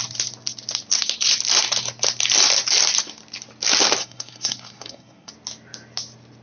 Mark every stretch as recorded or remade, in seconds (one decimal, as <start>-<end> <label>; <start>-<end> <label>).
0.0-4.0 recorded; 4.0-5.3 remade; 5.3-6.4 recorded